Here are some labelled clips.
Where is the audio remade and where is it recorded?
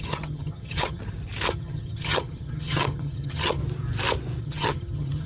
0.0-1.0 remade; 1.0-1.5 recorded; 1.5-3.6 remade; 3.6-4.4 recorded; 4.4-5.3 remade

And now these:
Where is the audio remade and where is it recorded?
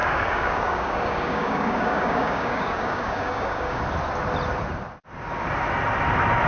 0.0-3.8 remade; 3.8-6.5 recorded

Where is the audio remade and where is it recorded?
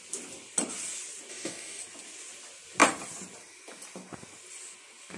0.0-1.3 recorded; 1.3-1.8 remade; 1.8-5.2 recorded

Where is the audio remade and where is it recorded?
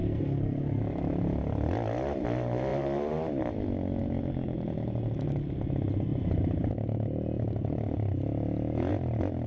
0.0-0.8 remade; 0.8-9.5 recorded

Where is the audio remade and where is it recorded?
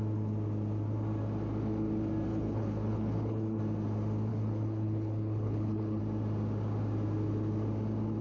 0.0-2.3 recorded; 2.3-3.6 remade; 3.6-4.3 recorded; 4.3-6.0 remade; 6.0-8.2 recorded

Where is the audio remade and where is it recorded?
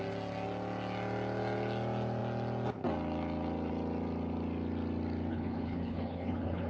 0.0-5.3 recorded; 5.3-6.7 remade